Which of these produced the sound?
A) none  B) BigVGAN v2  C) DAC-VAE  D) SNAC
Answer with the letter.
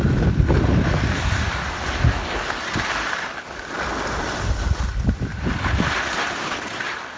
A